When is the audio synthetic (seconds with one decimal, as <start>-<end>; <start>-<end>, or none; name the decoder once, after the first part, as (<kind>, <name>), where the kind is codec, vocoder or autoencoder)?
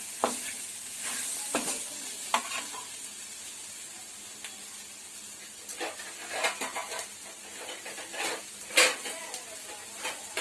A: none